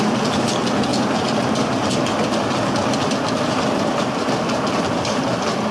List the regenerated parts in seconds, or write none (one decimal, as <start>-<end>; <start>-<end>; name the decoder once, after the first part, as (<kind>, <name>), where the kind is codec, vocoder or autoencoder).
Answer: none